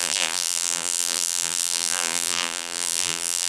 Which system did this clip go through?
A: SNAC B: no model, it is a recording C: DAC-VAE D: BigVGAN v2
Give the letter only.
D